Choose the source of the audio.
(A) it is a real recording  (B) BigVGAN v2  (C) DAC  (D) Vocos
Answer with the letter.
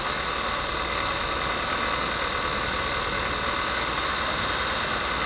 A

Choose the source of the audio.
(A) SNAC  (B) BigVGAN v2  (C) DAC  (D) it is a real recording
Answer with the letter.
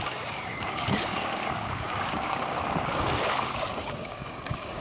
C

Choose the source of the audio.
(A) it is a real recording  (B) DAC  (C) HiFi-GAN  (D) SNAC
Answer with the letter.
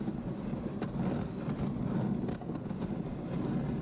A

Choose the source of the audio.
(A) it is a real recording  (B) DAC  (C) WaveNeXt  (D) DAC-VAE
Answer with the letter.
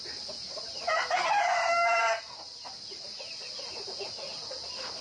A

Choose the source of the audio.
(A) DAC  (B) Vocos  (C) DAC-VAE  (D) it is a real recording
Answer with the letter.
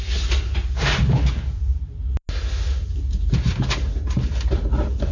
D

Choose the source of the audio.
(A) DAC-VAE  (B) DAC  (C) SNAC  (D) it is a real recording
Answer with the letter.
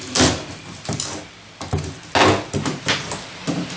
D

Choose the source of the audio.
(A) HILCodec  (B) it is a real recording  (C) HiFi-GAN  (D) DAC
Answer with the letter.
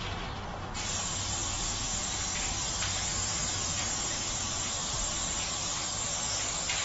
B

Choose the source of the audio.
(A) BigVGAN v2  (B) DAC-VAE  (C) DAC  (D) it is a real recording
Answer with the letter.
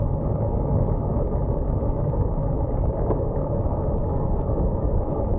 C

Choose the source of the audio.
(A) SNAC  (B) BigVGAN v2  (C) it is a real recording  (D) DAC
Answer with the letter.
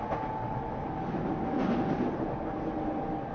C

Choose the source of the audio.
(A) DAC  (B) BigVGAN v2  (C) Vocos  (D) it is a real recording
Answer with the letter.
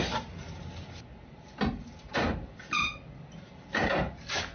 D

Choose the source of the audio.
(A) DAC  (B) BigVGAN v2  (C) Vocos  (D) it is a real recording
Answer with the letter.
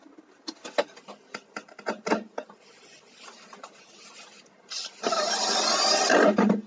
D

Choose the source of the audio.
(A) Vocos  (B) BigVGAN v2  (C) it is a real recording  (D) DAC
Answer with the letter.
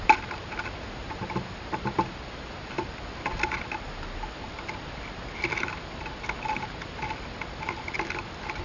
C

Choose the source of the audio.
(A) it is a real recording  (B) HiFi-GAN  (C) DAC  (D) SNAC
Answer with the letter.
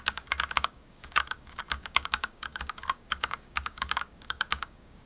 C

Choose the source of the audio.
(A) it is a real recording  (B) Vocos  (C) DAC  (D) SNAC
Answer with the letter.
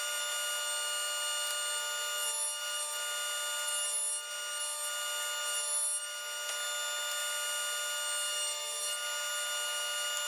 A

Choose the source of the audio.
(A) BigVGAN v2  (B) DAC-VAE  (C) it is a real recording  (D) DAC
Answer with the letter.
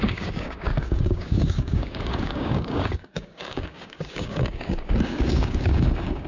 D